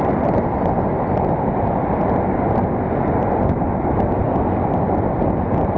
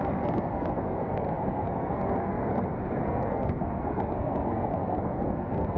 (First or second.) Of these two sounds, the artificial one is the second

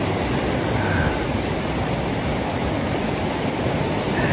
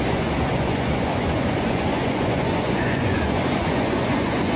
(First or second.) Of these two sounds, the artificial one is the second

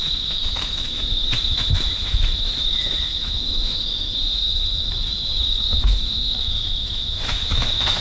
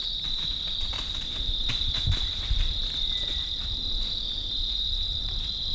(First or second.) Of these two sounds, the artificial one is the first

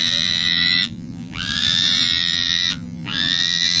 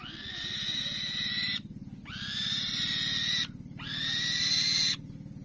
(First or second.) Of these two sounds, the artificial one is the first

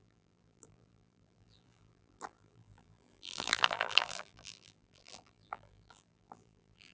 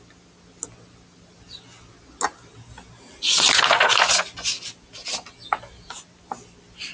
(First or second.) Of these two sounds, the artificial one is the first